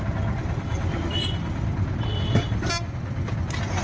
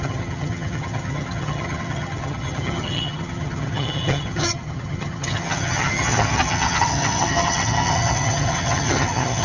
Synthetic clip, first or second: second